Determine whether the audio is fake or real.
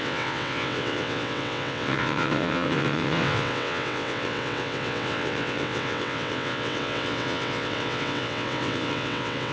fake